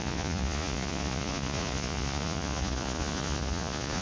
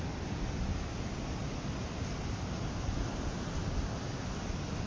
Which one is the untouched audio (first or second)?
second